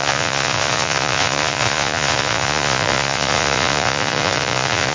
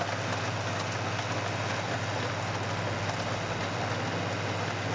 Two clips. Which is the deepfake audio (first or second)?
first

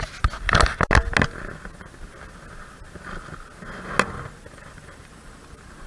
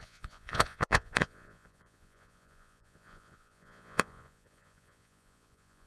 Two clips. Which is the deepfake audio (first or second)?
second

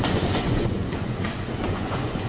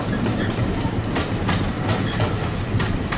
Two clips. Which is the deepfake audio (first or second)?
first